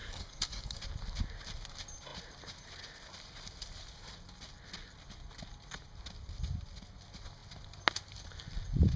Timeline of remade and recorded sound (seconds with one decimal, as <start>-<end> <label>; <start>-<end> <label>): 0.0-0.8 remade; 0.8-9.0 recorded